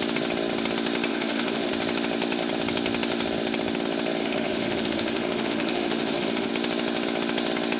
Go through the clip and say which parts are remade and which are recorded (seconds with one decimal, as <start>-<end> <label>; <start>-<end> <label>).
0.0-1.1 recorded; 1.1-1.7 remade; 1.7-4.2 recorded; 4.2-6.5 remade; 6.5-7.8 recorded